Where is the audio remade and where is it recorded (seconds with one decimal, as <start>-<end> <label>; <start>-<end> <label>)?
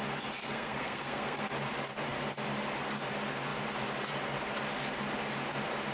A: 0.0-0.4 recorded; 0.4-1.5 remade; 1.5-5.9 recorded